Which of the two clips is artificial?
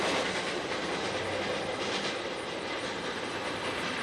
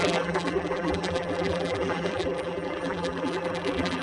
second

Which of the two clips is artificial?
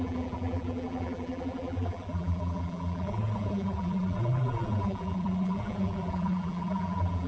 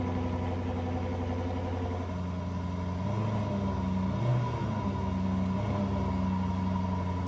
first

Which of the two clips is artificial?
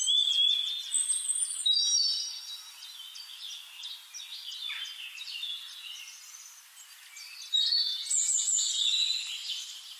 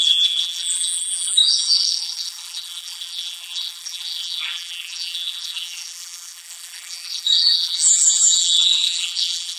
second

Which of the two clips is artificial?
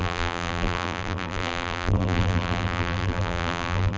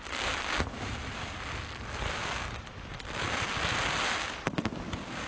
first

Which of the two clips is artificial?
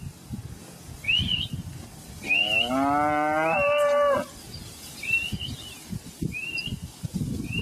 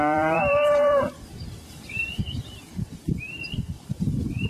second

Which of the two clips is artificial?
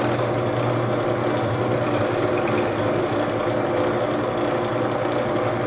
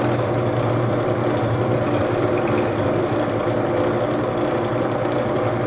second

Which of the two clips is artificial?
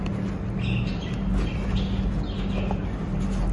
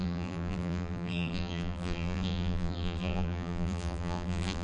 second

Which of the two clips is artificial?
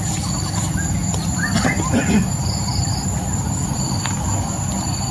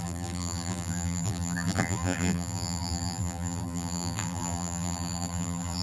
second